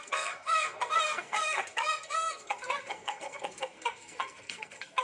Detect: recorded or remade remade